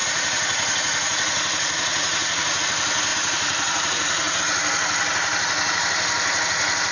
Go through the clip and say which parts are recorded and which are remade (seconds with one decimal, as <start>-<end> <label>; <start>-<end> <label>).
0.0-2.6 remade; 2.6-3.1 recorded; 3.1-4.4 remade; 4.4-6.9 recorded